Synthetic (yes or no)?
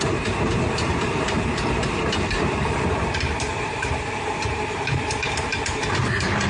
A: yes